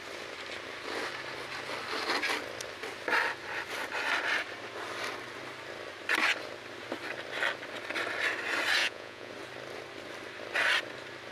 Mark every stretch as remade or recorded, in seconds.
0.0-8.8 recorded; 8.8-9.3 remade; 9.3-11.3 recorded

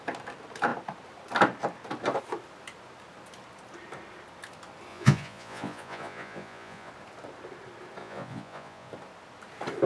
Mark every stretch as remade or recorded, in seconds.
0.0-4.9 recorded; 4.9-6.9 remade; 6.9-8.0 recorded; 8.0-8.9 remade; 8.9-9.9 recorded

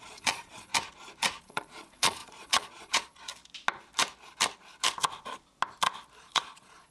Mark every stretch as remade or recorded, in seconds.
0.0-0.7 remade; 0.7-1.4 recorded; 1.4-3.3 remade; 3.3-6.2 recorded; 6.2-6.9 remade

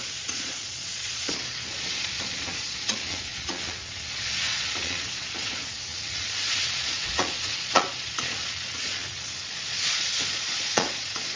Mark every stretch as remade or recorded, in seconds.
0.0-11.4 remade

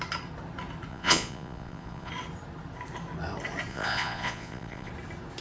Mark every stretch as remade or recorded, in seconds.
0.0-0.9 recorded; 0.9-2.1 remade; 2.1-3.7 recorded; 3.7-4.9 remade; 4.9-5.4 recorded

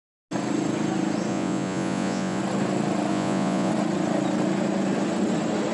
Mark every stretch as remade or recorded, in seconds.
0.0-1.3 recorded; 1.3-2.4 remade; 2.4-3.1 recorded; 3.1-3.7 remade; 3.7-5.7 recorded

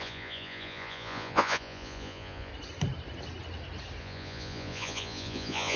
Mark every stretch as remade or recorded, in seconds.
0.0-2.5 remade; 2.5-4.0 recorded; 4.0-5.8 remade